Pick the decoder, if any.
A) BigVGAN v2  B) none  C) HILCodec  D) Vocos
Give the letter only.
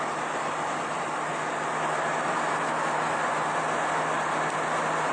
B